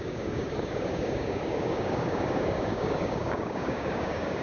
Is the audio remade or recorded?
remade